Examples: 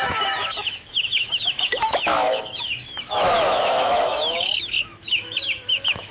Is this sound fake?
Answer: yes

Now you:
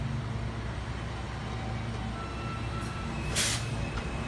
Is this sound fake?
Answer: no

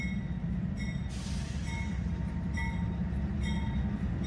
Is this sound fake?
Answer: no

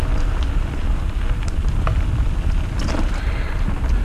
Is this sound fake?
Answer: no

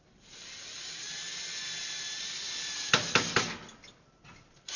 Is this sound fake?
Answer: no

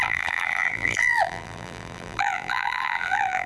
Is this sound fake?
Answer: yes